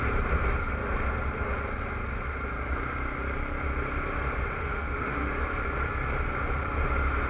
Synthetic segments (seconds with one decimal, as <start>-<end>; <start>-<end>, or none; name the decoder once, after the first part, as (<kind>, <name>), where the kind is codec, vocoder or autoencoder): 4.6-5.3 (autoencoder, DAC-VAE)